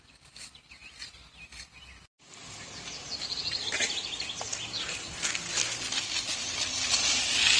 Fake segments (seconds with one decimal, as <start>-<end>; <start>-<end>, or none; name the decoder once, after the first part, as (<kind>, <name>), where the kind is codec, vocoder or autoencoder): none